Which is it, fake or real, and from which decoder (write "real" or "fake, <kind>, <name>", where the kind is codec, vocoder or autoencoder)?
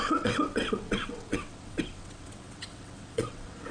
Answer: fake, vocoder, WaveNeXt